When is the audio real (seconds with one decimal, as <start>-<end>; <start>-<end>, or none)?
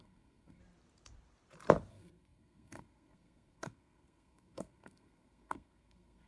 0.6-1.9